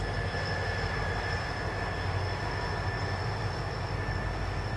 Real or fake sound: real